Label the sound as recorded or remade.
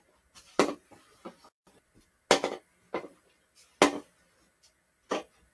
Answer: recorded